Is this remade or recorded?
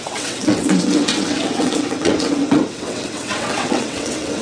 remade